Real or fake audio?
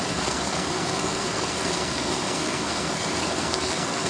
fake